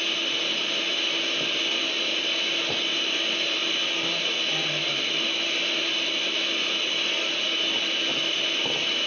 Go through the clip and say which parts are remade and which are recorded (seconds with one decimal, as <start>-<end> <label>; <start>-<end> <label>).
0.0-9.1 recorded